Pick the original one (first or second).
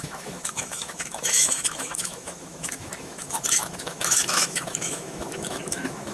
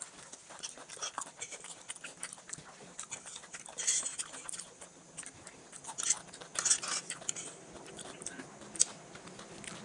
second